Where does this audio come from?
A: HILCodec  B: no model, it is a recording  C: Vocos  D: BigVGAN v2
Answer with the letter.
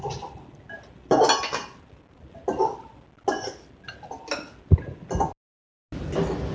B